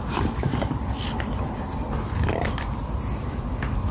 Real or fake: fake